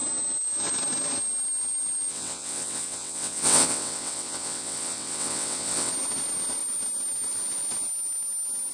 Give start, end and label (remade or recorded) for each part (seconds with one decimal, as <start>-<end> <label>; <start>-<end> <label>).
0.0-2.1 recorded; 2.1-5.9 remade; 5.9-8.7 recorded